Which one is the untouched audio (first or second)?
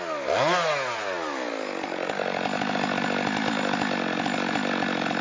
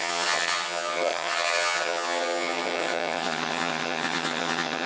first